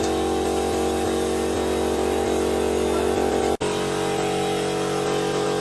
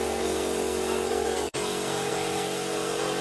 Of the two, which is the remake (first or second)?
second